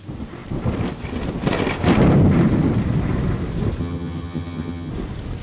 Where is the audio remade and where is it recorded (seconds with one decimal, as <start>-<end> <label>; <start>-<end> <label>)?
0.0-3.8 recorded; 3.8-4.9 remade; 4.9-5.4 recorded